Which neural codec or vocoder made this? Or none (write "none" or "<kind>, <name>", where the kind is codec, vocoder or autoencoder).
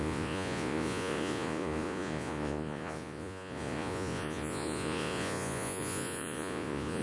vocoder, Vocos